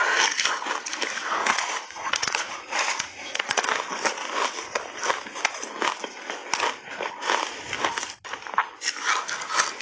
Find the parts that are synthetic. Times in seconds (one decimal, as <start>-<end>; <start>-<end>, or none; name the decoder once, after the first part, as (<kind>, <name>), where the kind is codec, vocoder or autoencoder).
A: 1.4-3.6 (vocoder, Vocos)